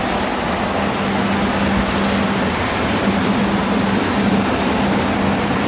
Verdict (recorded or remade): recorded